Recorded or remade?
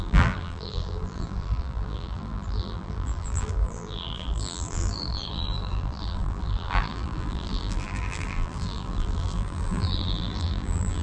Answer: remade